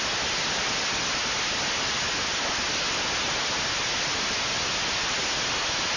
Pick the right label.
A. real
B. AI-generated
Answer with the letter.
A